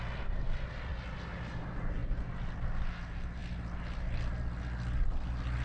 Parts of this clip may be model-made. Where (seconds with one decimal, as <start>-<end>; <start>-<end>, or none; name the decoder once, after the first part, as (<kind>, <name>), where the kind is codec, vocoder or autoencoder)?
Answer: none